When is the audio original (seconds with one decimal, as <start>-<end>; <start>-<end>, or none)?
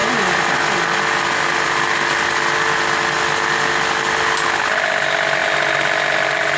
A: 0.0-6.6